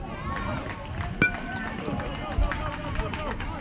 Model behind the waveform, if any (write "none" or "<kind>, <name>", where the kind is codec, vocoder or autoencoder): none